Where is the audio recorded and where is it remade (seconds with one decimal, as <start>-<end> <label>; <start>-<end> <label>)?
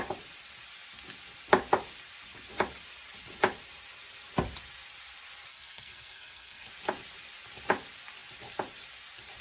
0.0-5.5 recorded; 5.5-6.7 remade; 6.7-9.4 recorded